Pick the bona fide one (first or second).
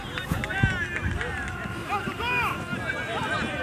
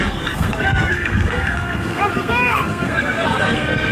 first